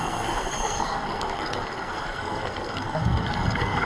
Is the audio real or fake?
fake